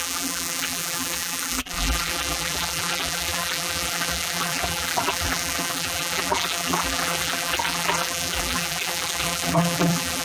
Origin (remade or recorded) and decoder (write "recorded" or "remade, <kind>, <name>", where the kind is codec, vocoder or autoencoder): remade, vocoder, BigVGAN v2